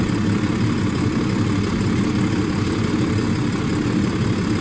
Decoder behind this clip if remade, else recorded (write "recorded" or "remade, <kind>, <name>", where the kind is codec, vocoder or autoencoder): recorded